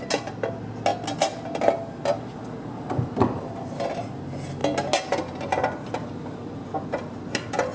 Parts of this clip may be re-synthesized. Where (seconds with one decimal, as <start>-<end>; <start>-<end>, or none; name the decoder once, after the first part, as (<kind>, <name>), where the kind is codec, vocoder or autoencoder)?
none